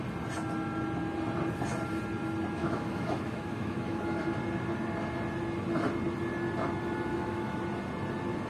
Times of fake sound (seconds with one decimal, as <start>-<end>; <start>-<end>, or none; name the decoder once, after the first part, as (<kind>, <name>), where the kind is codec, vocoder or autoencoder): 2.6-4.2 (autoencoder, DAC-VAE); 7.1-7.6